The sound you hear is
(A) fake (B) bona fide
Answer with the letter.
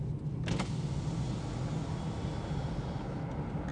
B